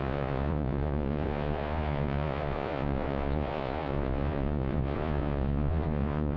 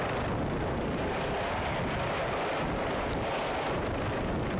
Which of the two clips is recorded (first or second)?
second